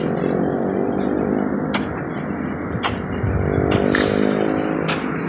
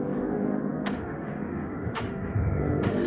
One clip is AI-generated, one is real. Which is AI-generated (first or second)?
second